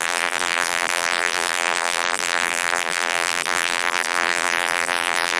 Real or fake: fake